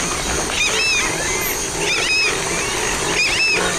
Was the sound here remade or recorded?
recorded